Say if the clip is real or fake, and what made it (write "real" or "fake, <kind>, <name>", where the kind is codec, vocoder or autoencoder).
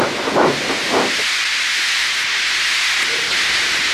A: real